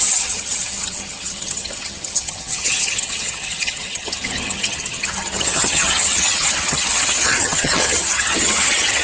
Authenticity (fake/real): fake